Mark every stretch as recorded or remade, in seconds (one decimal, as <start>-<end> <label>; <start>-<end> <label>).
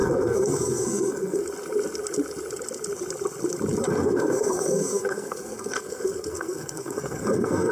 0.0-1.4 remade; 1.4-3.8 recorded; 3.8-7.7 remade